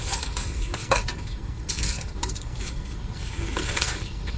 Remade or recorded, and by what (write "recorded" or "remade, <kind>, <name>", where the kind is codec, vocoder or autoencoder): remade, codec, SNAC